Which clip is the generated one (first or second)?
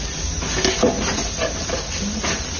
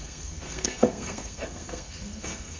second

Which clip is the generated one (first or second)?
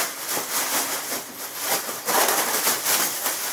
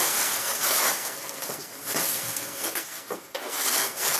second